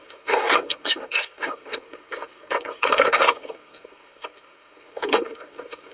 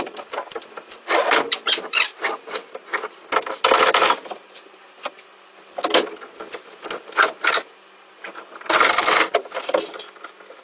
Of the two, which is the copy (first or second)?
first